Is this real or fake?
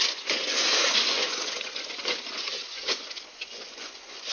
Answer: fake